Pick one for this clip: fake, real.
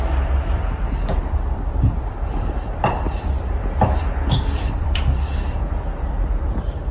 fake